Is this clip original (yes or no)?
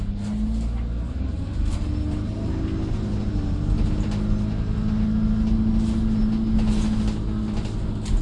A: yes